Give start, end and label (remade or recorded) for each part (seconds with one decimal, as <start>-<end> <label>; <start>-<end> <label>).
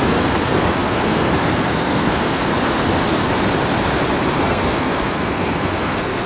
0.0-2.4 remade; 2.4-4.4 recorded; 4.4-6.3 remade